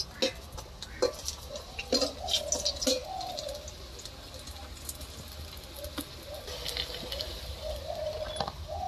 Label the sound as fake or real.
real